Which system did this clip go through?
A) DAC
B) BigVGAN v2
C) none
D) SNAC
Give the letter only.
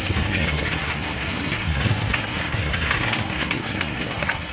D